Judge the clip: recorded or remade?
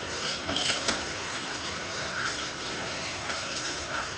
remade